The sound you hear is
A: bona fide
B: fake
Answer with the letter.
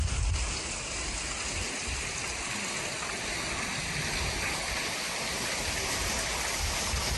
A